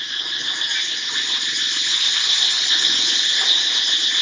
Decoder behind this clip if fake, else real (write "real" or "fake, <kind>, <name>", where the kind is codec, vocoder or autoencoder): real